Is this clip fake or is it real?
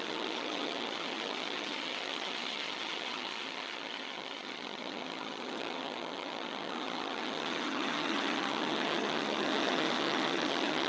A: fake